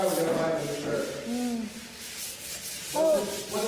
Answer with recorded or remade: recorded